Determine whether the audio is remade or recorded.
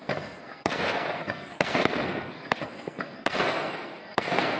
remade